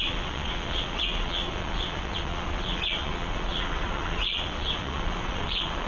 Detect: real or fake fake